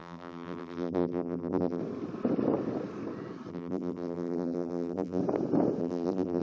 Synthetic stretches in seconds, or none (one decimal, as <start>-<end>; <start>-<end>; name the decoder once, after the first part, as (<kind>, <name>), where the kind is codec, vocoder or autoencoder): 0.0-1.8 (vocoder, BigVGAN v2); 3.5-5.2; 5.8-6.4